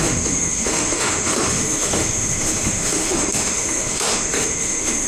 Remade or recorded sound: remade